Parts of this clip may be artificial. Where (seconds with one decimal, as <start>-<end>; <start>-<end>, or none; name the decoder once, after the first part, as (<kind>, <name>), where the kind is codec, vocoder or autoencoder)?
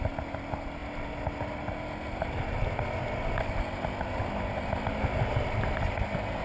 none